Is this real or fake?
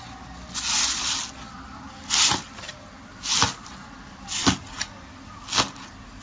real